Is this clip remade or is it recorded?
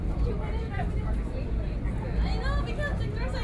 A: recorded